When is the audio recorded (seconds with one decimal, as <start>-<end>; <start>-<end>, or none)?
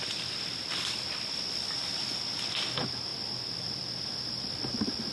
0.0-5.1